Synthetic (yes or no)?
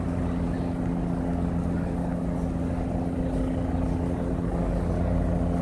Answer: no